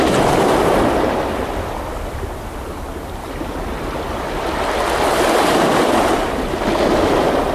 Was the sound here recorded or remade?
recorded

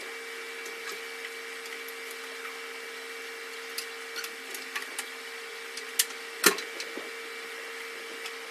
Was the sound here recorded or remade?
recorded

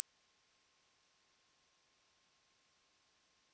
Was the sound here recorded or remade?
recorded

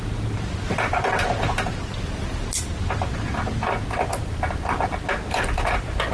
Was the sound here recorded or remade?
recorded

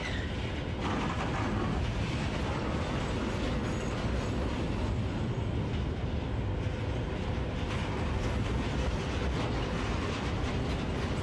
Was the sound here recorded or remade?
recorded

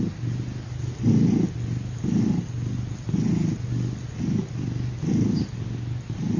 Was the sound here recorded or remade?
recorded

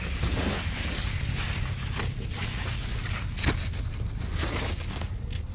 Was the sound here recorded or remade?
recorded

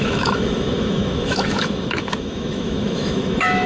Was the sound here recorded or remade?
remade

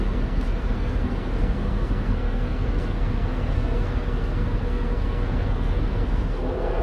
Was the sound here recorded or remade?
remade